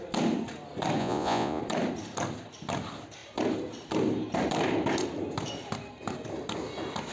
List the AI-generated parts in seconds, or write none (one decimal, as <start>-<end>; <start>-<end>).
1.0-1.6